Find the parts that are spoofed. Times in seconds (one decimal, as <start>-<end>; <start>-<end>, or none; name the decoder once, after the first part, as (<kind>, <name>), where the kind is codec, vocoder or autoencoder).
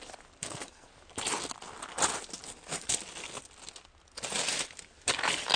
0.4-0.9 (codec, SNAC)